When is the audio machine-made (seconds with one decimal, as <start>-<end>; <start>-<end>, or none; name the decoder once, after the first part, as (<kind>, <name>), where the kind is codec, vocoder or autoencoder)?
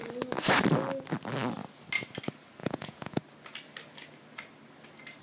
2.6-3.2 (vocoder, Vocos)